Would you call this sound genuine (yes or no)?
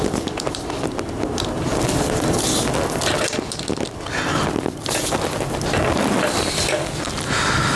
yes